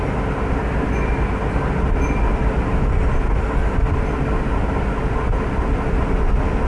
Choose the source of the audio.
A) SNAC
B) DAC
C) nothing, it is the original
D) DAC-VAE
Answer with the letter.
C